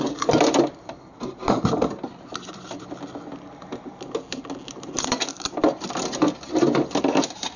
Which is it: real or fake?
real